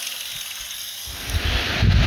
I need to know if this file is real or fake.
real